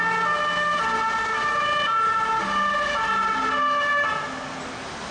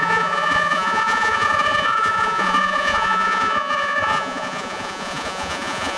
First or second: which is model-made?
second